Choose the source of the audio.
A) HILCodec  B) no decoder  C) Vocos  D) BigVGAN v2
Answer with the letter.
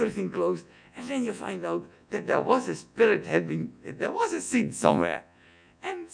C